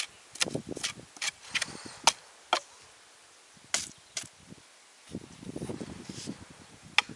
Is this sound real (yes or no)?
yes